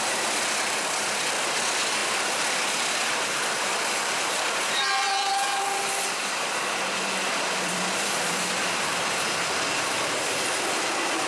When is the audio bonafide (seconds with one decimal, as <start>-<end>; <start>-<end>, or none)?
none